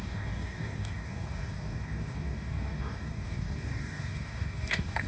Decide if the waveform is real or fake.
fake